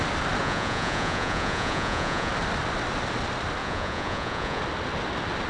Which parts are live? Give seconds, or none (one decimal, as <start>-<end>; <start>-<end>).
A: 0.0-0.4; 2.3-3.6; 4.6-5.5